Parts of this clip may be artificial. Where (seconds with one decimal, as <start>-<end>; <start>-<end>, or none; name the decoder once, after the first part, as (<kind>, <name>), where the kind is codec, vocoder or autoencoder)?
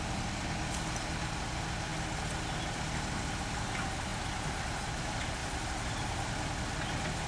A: 5.4-5.9 (vocoder, BigVGAN v2)